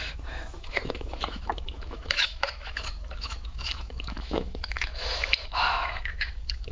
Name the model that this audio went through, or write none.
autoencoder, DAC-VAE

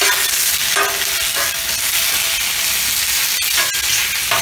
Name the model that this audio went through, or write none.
none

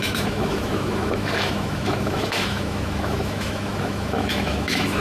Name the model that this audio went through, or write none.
autoencoder, DAC-VAE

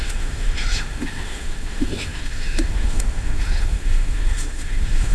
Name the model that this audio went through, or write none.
autoencoder, DAC-VAE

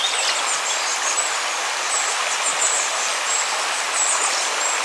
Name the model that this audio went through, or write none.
none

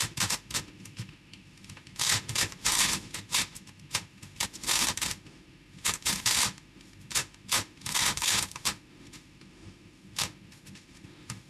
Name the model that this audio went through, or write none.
autoencoder, DAC-VAE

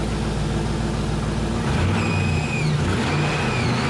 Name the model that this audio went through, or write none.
none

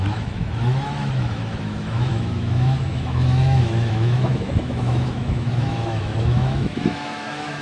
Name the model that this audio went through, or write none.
autoencoder, DAC-VAE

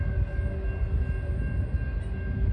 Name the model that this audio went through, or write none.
none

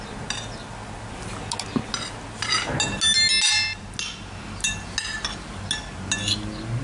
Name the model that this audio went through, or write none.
none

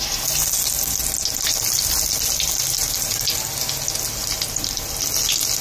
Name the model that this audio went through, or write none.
none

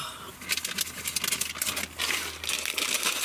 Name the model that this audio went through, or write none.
none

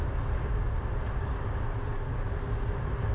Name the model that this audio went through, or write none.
none